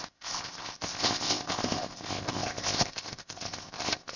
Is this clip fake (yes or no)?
yes